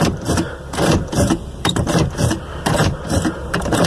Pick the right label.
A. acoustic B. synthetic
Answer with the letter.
B